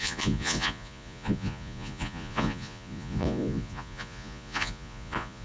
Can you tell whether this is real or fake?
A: fake